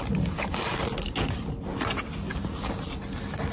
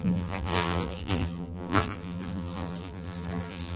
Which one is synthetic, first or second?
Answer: second